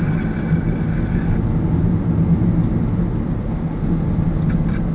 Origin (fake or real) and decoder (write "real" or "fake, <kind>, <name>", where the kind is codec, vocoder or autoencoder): real